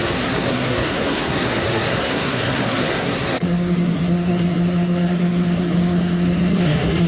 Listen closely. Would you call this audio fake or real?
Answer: fake